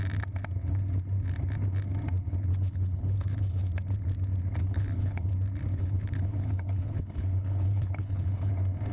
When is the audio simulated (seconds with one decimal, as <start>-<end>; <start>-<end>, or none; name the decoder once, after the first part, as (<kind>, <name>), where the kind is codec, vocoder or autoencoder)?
2.5-3.7 (codec, HILCodec); 4.6-5.3; 5.7-8.5